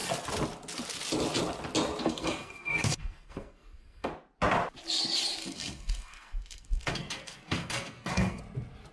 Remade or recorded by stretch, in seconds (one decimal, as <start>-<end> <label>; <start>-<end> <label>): 0.0-2.0 recorded; 2.0-4.1 remade; 4.1-5.4 recorded; 5.4-8.4 remade; 8.4-8.9 recorded